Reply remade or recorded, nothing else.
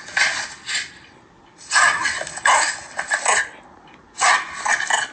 recorded